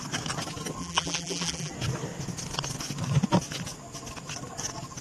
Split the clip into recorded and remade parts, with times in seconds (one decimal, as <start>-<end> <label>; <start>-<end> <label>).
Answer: 0.0-0.8 recorded; 0.8-1.7 remade; 1.7-5.0 recorded